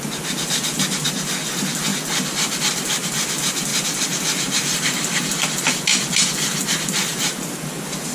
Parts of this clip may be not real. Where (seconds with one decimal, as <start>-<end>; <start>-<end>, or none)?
3.7-5.7